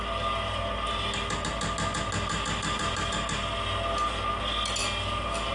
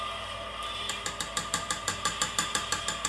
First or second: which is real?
first